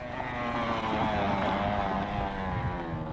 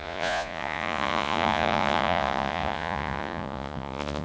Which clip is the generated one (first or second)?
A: second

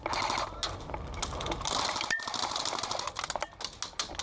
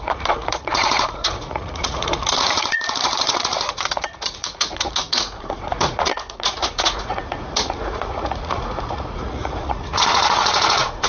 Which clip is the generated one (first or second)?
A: second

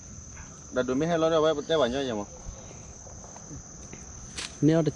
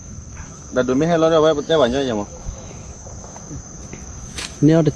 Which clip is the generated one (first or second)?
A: second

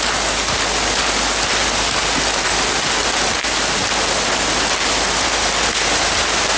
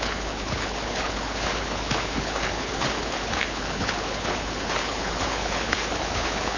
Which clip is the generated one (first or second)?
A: second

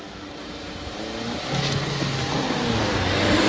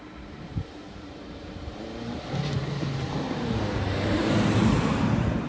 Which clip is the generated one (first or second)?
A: second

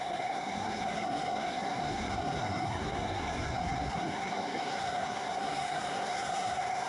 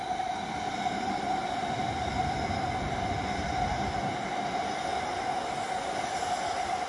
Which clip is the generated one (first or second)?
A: first